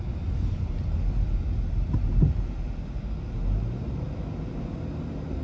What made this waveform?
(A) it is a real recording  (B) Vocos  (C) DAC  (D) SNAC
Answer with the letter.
A